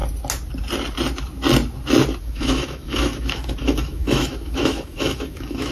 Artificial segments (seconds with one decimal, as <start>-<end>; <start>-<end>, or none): 2.2-5.7